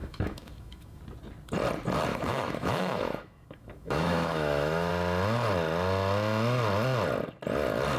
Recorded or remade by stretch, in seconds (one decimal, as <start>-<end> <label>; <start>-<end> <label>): 0.0-1.0 remade; 1.0-2.1 recorded; 2.1-4.9 remade; 4.9-8.0 recorded